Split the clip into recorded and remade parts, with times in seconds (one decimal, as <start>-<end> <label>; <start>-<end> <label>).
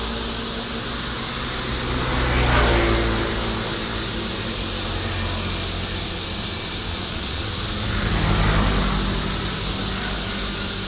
0.0-6.9 recorded; 6.9-7.4 remade; 7.4-10.9 recorded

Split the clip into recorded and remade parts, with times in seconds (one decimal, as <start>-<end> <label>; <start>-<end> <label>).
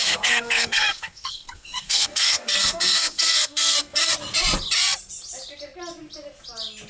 0.0-4.1 remade; 4.1-6.9 recorded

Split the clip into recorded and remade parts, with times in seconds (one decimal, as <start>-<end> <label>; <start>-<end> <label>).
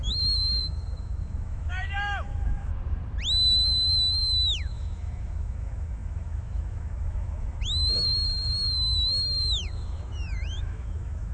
0.0-2.7 remade; 2.7-4.2 recorded; 4.2-11.3 remade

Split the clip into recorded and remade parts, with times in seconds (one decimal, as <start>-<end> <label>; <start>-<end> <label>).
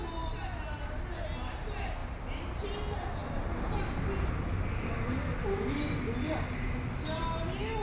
0.0-7.8 recorded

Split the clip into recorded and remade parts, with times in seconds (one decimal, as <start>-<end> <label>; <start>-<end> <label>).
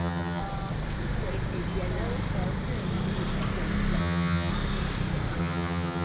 0.0-0.4 remade; 0.4-4.0 recorded; 4.0-4.5 remade; 4.5-5.4 recorded; 5.4-6.0 remade